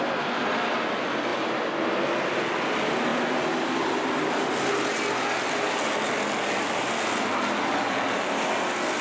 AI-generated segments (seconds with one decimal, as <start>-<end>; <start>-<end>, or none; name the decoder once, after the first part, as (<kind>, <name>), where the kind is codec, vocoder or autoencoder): none